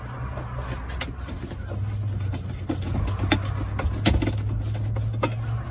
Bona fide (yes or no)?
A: yes